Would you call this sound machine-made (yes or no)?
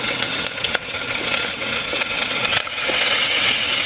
yes